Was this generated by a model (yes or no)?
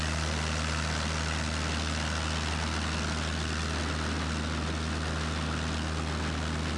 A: no